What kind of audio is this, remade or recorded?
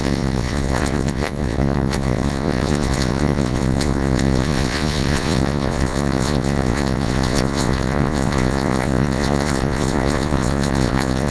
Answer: remade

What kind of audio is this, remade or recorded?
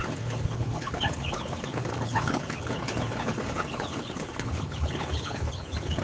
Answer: remade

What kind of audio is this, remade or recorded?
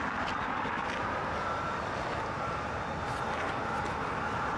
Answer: recorded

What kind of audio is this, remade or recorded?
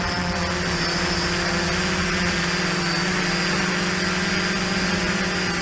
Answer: recorded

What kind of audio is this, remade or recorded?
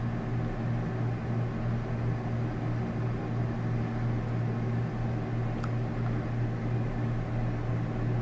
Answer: recorded